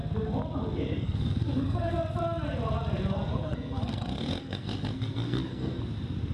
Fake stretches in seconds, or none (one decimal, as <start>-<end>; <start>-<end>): 0.9-1.9; 3.3-5.8